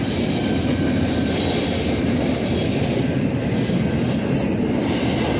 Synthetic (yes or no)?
no